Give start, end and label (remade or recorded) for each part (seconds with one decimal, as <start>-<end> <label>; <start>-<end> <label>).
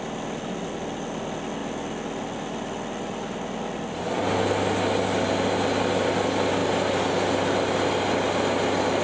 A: 0.0-9.0 recorded